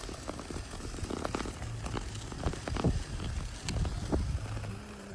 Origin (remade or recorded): recorded